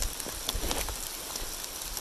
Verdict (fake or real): real